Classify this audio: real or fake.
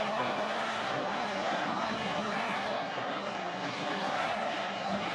fake